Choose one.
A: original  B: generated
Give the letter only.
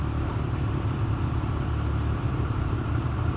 B